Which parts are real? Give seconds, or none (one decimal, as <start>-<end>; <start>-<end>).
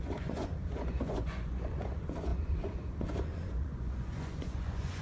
none